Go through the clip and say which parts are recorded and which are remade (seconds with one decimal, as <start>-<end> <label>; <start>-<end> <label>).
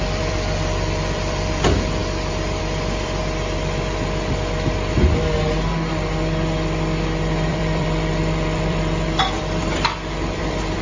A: 0.0-2.0 remade; 2.0-2.6 recorded; 2.6-3.2 remade; 3.2-7.5 recorded; 7.5-10.8 remade